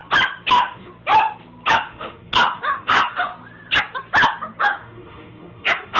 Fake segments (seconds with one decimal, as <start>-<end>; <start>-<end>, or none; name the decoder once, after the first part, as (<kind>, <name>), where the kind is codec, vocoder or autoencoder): 0.5-0.9 (autoencoder, DAC-VAE); 1.7-3.3; 4.6-6.0